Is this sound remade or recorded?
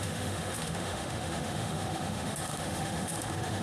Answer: remade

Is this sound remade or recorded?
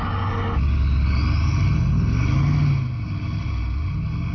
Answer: recorded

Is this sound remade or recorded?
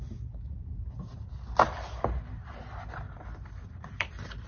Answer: recorded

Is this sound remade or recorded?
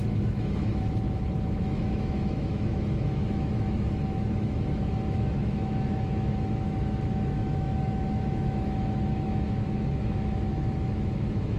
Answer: remade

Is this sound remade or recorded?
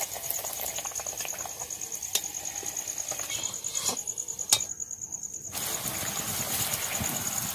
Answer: recorded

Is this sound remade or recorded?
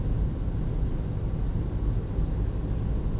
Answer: recorded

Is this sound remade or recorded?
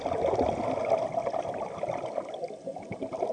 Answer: recorded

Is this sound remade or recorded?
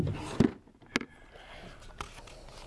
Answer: recorded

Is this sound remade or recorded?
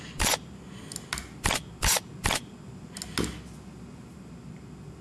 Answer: recorded